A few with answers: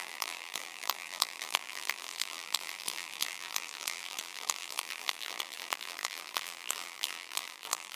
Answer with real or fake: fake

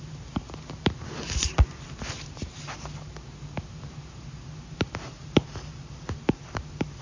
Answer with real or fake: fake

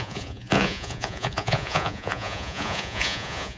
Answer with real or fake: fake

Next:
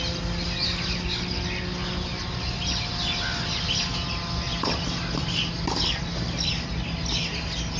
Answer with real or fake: real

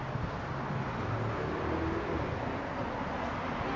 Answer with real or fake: real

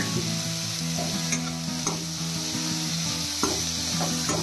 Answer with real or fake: real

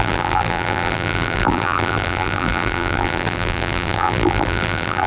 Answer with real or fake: fake